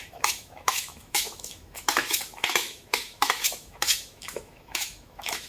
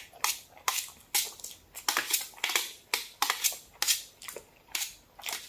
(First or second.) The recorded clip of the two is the second